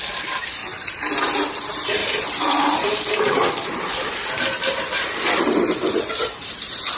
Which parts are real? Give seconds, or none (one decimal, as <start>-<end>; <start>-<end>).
0.6-1.4